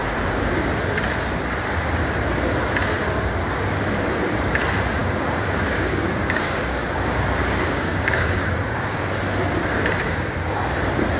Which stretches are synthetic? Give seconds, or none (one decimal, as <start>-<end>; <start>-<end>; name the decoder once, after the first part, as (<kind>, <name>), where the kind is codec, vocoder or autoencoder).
5.0-9.1 (codec, DAC); 10.0-10.6